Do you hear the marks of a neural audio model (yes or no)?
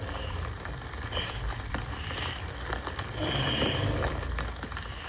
yes